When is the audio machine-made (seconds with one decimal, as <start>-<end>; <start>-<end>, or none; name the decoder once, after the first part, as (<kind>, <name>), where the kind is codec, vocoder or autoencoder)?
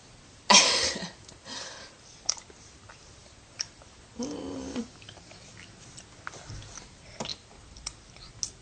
0.0-4.8 (vocoder, BigVGAN v2); 7.3-8.1